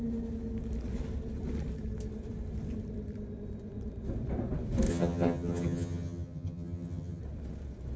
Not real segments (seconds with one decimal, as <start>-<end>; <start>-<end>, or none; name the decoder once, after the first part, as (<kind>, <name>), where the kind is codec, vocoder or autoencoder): 4.9-7.2 (vocoder, HiFi-GAN)